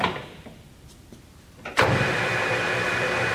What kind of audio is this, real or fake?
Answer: fake